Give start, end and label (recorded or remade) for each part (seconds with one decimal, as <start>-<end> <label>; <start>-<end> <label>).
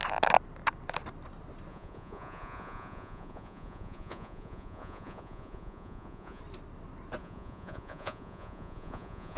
0.0-1.7 recorded; 1.7-6.4 remade; 6.4-7.2 recorded; 7.2-9.4 remade